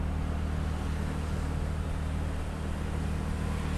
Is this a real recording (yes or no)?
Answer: yes